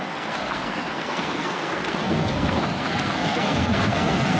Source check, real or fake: fake